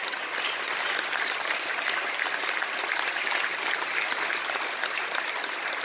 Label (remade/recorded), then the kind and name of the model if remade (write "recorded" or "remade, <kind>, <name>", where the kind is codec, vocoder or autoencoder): recorded